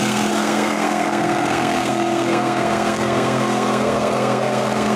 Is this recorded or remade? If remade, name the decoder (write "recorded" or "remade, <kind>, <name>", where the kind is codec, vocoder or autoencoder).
remade, codec, SNAC